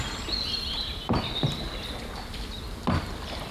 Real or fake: real